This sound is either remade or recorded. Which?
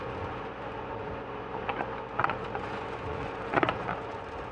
remade